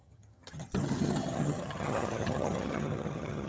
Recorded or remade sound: remade